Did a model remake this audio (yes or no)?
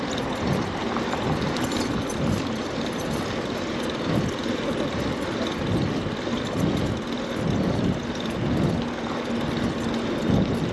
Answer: no